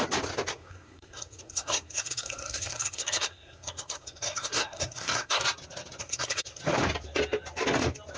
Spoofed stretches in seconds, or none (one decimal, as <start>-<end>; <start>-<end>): 0.5-5.4; 6.0-6.6